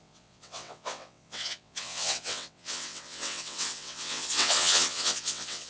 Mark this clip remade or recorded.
remade